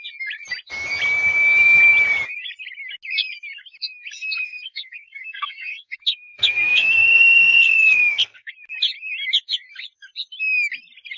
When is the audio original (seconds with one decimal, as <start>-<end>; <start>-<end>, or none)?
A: 0.0-4.4; 8.5-11.2